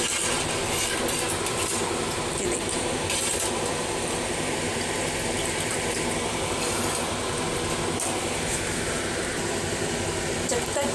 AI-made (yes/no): yes